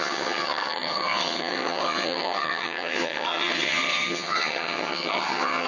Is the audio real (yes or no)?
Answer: no